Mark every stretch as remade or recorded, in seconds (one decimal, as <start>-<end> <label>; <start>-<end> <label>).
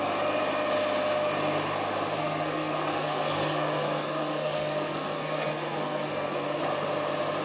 0.0-2.2 recorded; 2.2-6.6 remade; 6.6-7.4 recorded